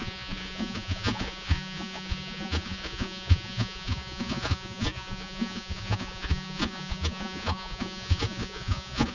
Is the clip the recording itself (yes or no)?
no